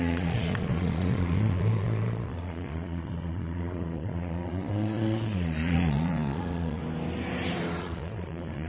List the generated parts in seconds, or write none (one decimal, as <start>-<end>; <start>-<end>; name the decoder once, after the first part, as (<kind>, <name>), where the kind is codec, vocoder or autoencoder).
0.0-6.8 (vocoder, Vocos); 7.8-8.7